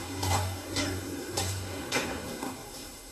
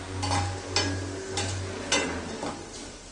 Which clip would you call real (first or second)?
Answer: second